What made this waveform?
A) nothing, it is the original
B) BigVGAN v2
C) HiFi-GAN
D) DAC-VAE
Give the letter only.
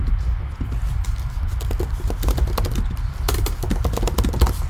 A